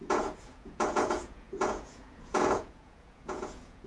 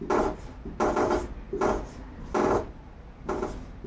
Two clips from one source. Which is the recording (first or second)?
second